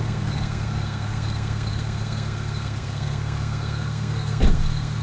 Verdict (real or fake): fake